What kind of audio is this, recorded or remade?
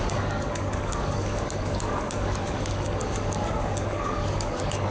remade